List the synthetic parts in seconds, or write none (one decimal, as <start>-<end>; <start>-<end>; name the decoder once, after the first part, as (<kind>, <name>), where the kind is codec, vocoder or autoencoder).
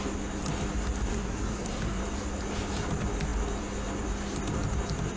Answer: 1.1-2.0 (codec, SNAC)